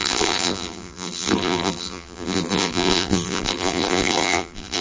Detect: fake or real fake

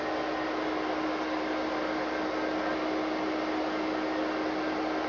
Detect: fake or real real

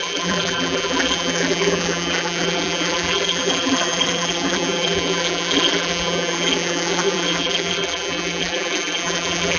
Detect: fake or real fake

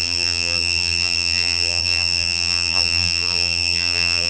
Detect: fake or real fake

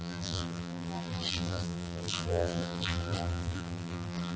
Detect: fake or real fake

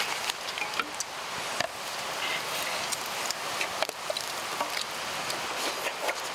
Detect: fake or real real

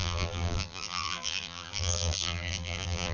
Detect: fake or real fake